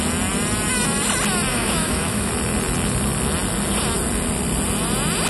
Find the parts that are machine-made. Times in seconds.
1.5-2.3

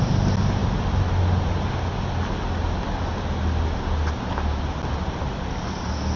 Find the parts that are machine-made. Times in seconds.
none

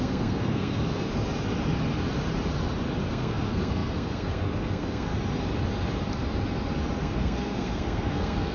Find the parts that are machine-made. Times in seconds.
0.0-1.1; 3.0-5.1; 7.0-8.5

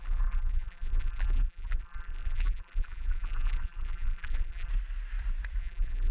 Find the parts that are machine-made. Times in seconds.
0.0-4.7; 5.6-6.1

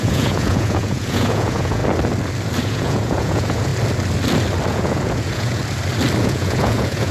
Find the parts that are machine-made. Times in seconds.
0.0-1.8; 2.6-3.7; 4.7-5.6; 6.2-7.1

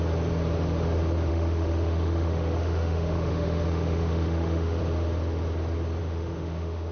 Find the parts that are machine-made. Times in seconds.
1.3-4.8; 6.0-6.9

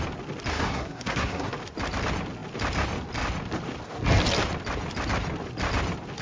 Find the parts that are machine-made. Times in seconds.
0.5-1.5